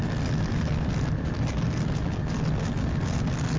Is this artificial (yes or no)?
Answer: no